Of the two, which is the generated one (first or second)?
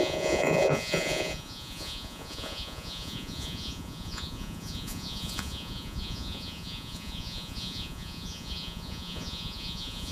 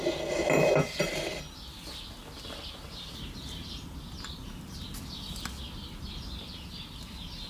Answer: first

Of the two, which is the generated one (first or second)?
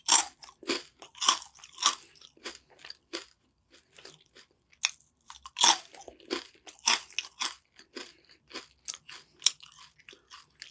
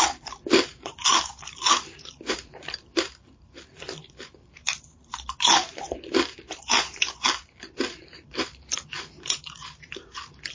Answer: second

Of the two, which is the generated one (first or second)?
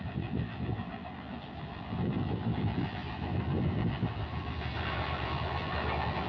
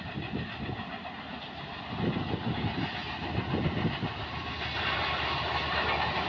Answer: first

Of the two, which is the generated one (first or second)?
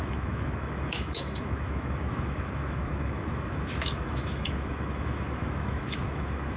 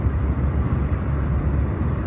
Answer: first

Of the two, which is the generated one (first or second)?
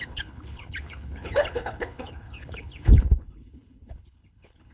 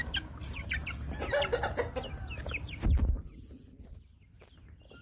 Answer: first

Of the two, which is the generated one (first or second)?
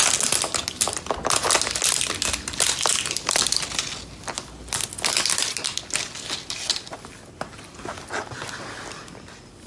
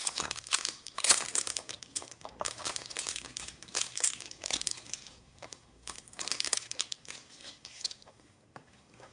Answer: second